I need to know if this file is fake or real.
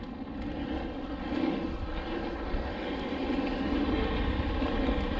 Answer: real